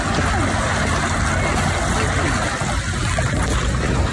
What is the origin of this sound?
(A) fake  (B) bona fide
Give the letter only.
B